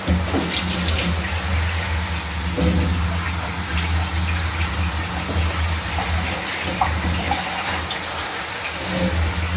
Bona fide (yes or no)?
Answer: yes